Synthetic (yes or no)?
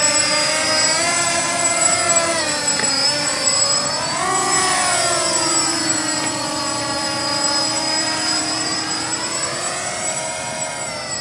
yes